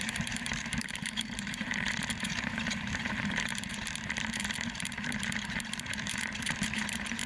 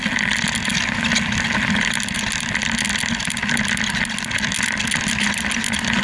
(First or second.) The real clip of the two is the second